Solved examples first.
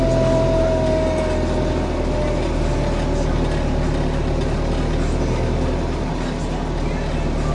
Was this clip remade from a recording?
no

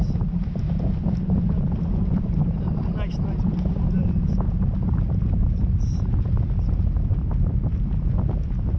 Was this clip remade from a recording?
no